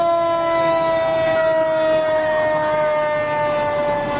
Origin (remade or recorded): recorded